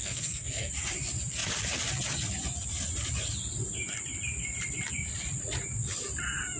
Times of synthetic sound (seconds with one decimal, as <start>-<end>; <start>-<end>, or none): 0.0-0.7